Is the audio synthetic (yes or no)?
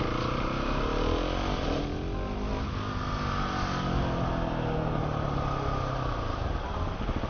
no